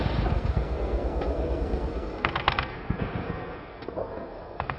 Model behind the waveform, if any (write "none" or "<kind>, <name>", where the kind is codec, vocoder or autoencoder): codec, SNAC